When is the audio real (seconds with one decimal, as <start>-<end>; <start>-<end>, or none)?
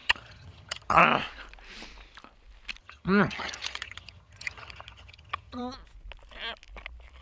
1.0-2.8; 5.6-7.2